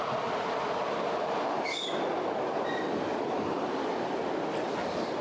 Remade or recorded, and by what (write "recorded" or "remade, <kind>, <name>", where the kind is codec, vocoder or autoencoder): recorded